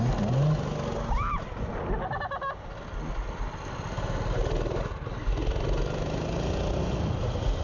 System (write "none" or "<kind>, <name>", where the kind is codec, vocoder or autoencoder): none